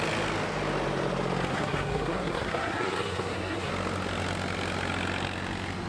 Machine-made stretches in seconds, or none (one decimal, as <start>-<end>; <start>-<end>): 1.5-3.7